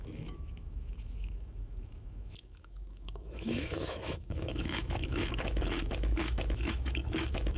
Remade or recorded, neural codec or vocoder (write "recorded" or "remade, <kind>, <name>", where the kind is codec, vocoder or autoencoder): remade, autoencoder, DAC-VAE